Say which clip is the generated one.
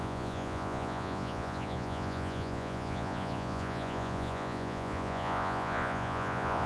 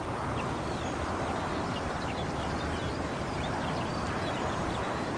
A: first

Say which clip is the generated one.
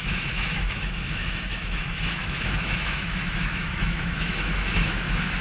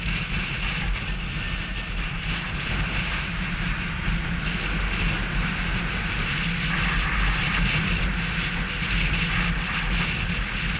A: first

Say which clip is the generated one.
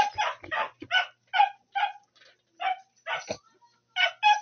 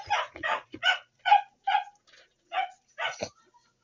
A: second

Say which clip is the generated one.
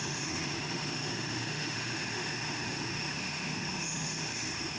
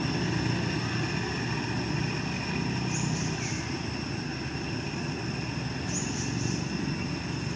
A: first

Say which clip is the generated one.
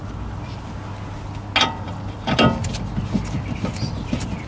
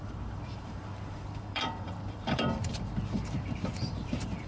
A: second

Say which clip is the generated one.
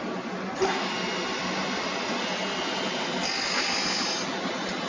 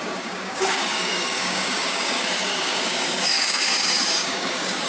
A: second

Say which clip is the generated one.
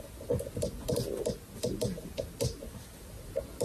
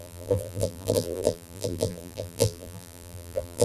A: second